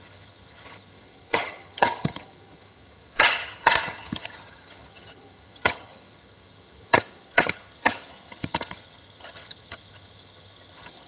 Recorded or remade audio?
remade